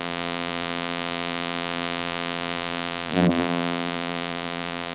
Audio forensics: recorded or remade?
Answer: remade